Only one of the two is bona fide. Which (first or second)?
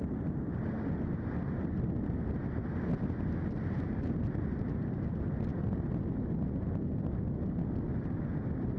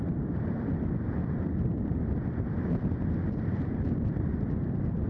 first